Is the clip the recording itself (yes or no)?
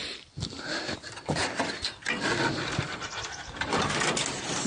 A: yes